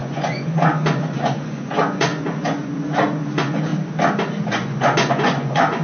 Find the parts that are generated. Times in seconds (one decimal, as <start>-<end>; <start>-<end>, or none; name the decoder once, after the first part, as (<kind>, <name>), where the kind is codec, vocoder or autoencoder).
0.0-3.7 (vocoder, Vocos); 4.5-5.8